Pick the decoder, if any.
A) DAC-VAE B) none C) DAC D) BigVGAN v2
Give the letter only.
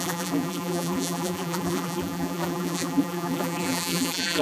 D